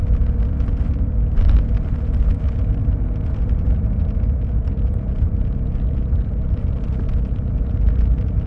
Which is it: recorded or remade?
recorded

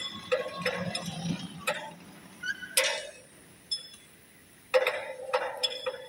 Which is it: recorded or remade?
recorded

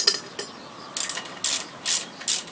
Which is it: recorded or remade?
recorded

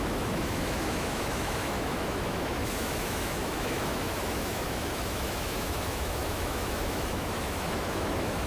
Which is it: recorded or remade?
remade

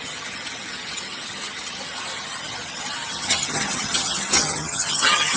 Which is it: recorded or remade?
remade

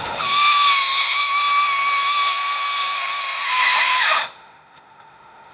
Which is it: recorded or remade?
remade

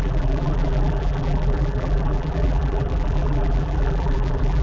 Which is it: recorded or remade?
remade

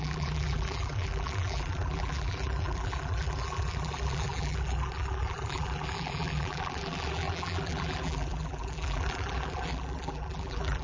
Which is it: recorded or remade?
remade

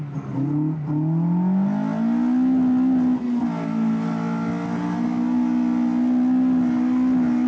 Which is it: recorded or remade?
recorded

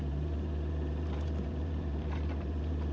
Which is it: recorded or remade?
remade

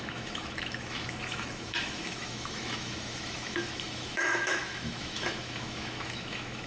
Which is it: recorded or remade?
remade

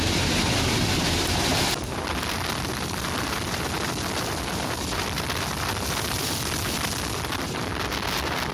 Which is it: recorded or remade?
remade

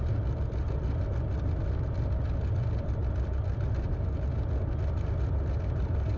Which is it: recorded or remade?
recorded